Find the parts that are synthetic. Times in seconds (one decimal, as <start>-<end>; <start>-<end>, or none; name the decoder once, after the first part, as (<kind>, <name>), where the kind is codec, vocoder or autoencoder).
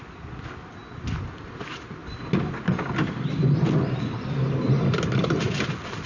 none